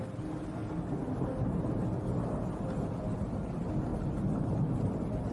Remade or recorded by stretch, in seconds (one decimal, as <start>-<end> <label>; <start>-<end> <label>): 0.0-5.3 recorded